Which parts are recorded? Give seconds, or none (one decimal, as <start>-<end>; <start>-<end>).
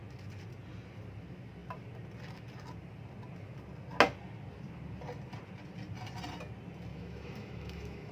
0.0-6.9